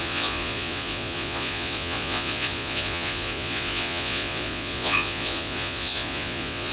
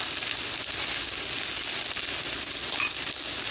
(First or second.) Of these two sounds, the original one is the second